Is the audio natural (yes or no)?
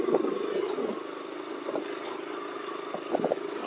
yes